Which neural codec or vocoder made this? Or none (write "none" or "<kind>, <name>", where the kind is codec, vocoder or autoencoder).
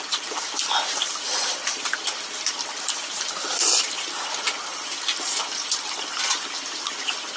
vocoder, BigVGAN v2